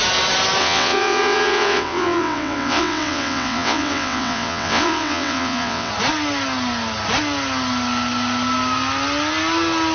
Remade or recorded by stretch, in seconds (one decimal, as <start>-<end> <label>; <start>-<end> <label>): 0.0-0.6 recorded; 0.6-5.9 remade; 5.9-9.9 recorded